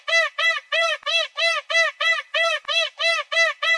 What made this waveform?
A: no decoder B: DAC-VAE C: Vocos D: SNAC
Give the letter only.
A